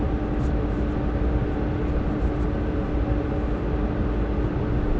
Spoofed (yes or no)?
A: no